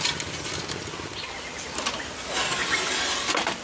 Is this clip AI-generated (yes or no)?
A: no